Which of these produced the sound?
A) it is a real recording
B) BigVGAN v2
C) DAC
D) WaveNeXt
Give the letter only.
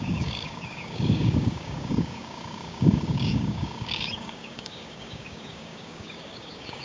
C